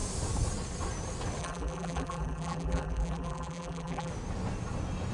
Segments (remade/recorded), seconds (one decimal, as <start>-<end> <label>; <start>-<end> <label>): 0.0-1.4 recorded; 1.4-4.1 remade; 4.1-5.1 recorded